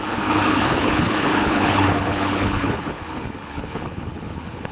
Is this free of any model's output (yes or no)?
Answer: no